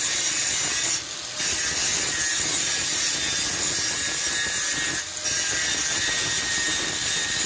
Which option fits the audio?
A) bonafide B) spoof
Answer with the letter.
A